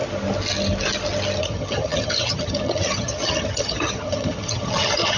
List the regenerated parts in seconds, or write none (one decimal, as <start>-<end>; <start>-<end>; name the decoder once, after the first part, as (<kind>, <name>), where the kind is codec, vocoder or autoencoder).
1.4-5.2 (vocoder, HiFi-GAN)